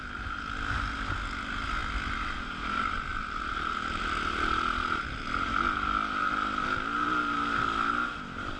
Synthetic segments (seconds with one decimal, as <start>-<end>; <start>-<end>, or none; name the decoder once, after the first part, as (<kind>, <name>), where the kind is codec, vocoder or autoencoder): none